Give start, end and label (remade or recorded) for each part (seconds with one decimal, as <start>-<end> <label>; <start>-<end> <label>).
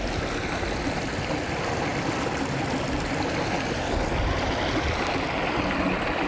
0.0-6.3 recorded